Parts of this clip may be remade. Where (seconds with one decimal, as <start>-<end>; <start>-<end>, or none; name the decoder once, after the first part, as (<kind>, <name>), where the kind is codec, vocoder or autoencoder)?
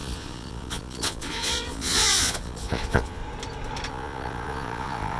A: 0.0-3.2 (vocoder, Vocos); 3.9-5.2